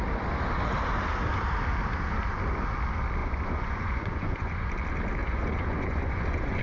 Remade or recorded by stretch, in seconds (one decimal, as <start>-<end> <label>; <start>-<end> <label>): 0.0-3.2 recorded; 3.2-4.7 remade; 4.7-5.2 recorded; 5.2-6.6 remade